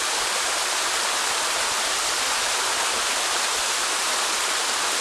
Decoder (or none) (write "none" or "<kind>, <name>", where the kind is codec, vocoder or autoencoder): none